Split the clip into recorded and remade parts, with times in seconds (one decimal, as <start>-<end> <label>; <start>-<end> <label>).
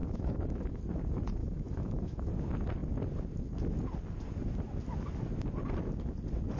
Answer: 0.0-0.8 remade; 0.8-1.4 recorded; 1.4-2.3 remade; 2.3-6.6 recorded